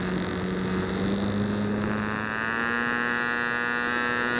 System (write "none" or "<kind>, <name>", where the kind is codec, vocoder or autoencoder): none